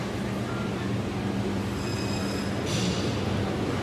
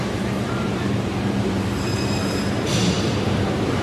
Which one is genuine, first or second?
first